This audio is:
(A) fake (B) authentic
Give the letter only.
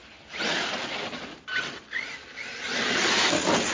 B